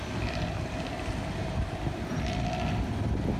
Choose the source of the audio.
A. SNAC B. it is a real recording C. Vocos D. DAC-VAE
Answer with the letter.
B